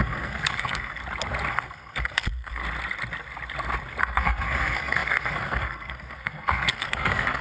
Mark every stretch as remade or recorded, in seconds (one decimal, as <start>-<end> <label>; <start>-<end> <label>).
0.0-1.0 remade; 1.0-1.5 recorded; 1.5-2.6 remade; 2.6-4.0 recorded; 4.0-7.4 remade